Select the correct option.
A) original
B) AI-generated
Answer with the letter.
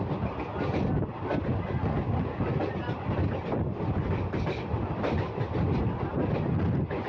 A